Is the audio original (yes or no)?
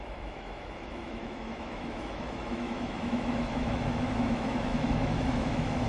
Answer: no